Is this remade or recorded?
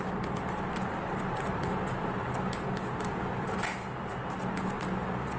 recorded